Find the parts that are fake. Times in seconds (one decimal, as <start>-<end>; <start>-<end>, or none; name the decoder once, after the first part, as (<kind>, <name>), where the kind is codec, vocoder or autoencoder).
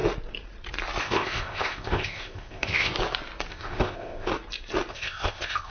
1.0-2.9 (codec, ZipCodec); 3.5-4.3; 4.9-5.7